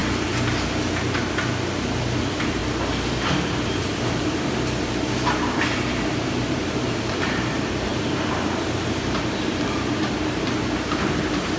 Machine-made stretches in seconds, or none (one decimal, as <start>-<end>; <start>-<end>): 2.2-2.6; 3.9-11.6